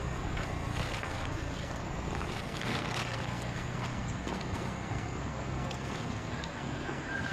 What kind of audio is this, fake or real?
fake